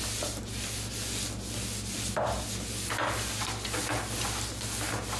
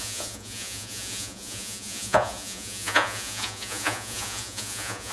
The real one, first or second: first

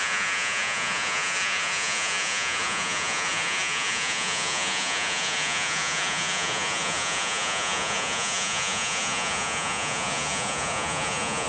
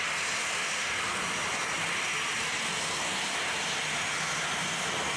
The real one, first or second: second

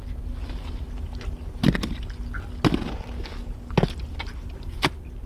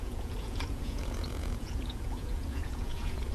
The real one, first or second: first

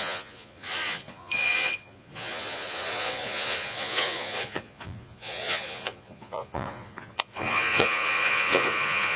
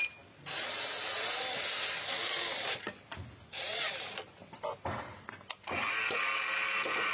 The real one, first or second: second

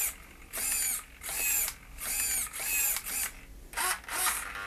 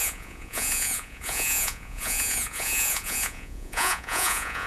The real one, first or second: first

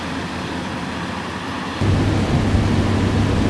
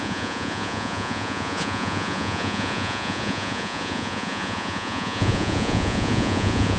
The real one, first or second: first